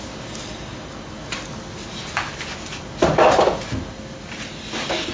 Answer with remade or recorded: recorded